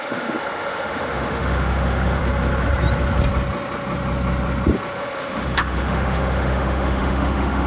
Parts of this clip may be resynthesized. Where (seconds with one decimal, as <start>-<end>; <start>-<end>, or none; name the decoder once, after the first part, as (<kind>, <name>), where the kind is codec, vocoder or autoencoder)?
0.0-2.2 (autoencoder, DAC-VAE); 5.0-7.7